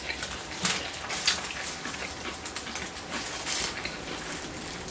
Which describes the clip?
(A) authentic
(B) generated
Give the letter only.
A